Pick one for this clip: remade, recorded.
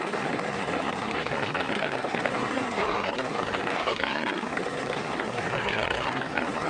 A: remade